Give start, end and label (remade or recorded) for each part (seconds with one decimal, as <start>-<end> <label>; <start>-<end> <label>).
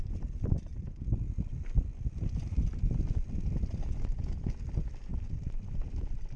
0.0-6.4 recorded